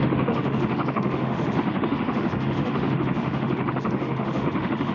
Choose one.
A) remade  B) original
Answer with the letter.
A